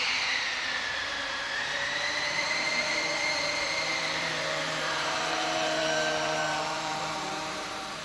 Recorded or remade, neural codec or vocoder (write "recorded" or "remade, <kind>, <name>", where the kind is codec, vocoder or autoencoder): remade, vocoder, BigVGAN v2